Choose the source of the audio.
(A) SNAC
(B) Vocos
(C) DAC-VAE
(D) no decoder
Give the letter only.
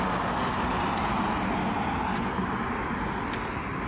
D